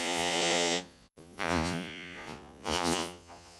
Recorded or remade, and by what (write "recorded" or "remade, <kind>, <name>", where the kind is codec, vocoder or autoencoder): remade, vocoder, Vocos